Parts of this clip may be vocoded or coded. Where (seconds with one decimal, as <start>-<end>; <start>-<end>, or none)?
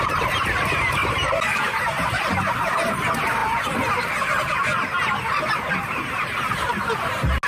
none